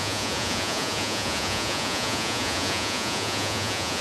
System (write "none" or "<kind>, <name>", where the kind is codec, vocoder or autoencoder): vocoder, Vocos